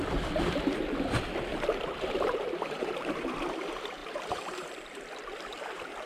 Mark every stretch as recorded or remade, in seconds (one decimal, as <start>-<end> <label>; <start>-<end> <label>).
0.0-1.5 recorded; 1.5-3.6 remade; 3.6-4.0 recorded; 4.0-5.0 remade; 5.0-6.1 recorded